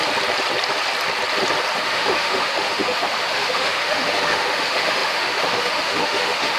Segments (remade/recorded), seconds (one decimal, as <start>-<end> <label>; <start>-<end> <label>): 0.0-1.8 recorded; 1.8-6.6 remade